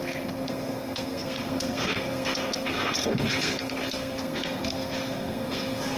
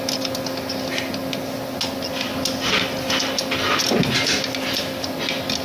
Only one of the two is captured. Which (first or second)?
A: second